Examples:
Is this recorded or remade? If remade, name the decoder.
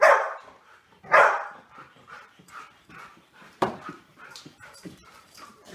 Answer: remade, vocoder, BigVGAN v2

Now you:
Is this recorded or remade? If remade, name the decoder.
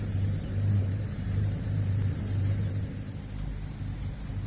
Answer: remade, vocoder, BigVGAN v2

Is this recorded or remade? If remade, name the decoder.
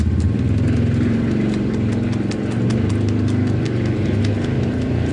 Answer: recorded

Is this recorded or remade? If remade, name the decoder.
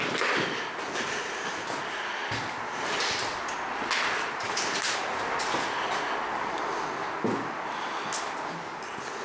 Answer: recorded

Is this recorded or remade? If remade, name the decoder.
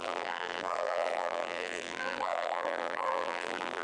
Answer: remade, vocoder, BigVGAN v2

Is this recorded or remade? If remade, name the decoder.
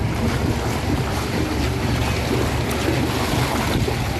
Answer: recorded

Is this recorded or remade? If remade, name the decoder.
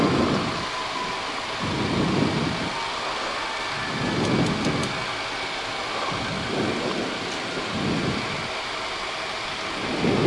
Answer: recorded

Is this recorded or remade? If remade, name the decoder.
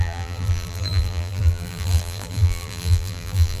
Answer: remade, vocoder, BigVGAN v2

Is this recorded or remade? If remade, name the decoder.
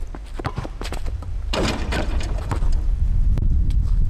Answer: remade, vocoder, BigVGAN v2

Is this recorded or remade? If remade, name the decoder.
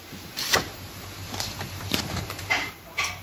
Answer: remade, vocoder, BigVGAN v2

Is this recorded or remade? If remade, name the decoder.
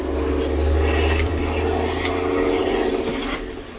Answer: recorded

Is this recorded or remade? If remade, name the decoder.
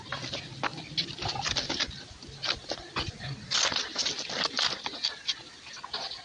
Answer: recorded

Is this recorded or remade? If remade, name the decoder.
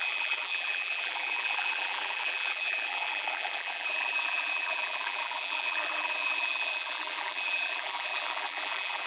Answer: remade, vocoder, BigVGAN v2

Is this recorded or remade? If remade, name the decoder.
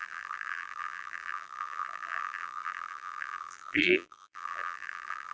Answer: remade, vocoder, BigVGAN v2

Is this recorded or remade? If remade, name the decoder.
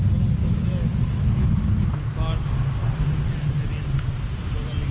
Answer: recorded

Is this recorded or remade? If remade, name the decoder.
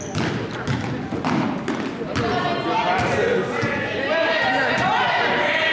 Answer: recorded